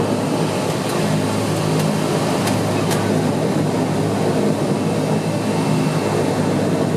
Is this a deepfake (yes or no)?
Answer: no